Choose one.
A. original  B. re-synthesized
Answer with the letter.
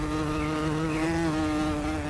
A